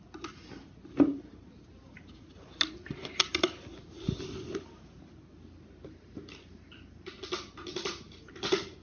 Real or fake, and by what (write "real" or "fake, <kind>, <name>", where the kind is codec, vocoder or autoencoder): real